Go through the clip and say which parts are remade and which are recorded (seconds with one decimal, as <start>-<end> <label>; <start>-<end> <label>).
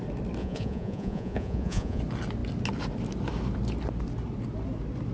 0.0-0.4 recorded; 0.4-2.0 remade; 2.0-5.1 recorded